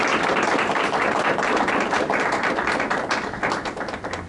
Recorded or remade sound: recorded